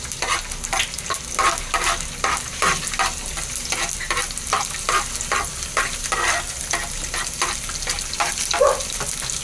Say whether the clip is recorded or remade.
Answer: recorded